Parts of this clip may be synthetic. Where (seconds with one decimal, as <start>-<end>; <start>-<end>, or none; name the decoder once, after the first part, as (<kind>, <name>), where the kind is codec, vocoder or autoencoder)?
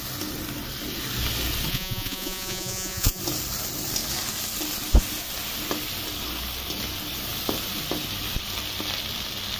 1.7-3.2 (vocoder, Vocos)